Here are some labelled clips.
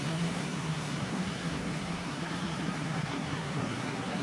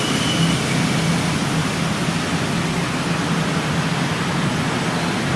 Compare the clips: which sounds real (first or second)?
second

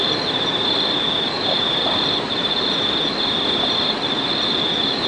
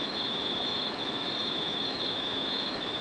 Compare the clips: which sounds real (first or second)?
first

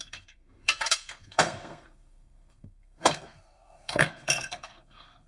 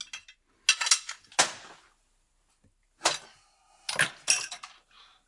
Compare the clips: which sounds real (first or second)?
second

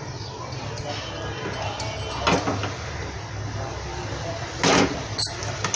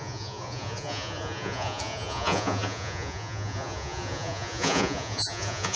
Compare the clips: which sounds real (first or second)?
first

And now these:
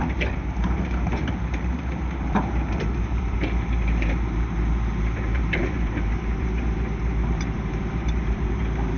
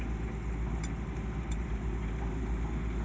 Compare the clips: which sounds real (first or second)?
second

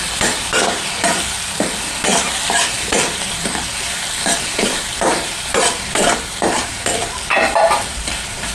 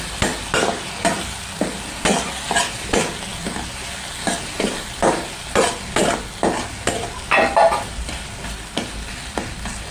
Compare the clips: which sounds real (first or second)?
second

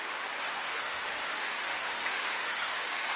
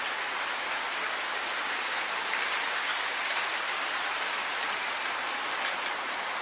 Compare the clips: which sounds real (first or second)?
second